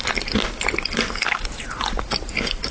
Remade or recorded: recorded